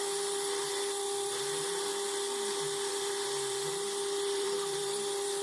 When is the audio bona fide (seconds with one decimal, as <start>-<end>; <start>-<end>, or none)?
1.9-2.9